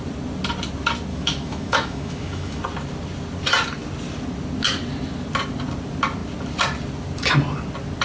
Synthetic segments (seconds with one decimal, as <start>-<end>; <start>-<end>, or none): 1.1-2.6